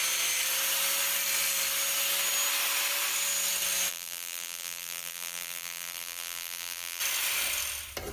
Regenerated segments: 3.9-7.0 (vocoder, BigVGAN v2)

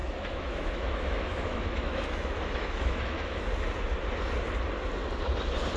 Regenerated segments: 0.0-3.5 (autoencoder, DAC-VAE)

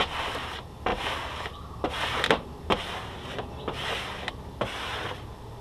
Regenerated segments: none

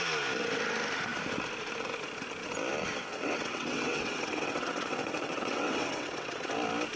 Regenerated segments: 3.1-6.5 (vocoder, WaveNeXt)

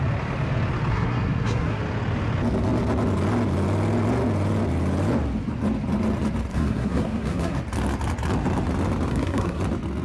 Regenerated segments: 0.9-1.8 (codec, SNAC); 6.5-7.6; 9.1-9.6

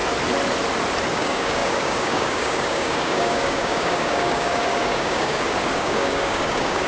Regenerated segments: 1.1-6.9 (codec, DAC)